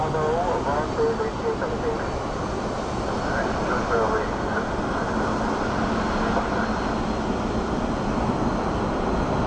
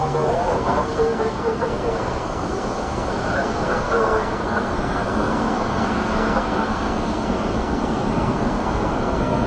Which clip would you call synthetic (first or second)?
second